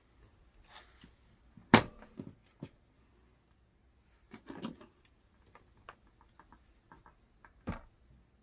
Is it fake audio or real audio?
real